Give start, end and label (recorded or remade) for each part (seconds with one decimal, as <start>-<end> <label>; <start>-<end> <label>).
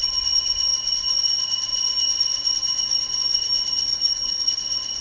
0.0-3.9 recorded; 3.9-4.6 remade; 4.6-5.0 recorded